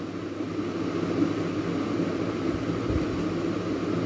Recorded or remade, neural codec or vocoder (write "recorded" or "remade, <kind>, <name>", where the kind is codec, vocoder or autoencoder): recorded